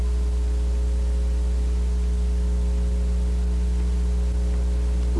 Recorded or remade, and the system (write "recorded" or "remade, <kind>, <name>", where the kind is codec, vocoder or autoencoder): recorded